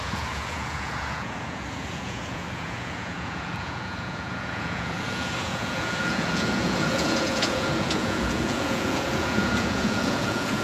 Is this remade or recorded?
remade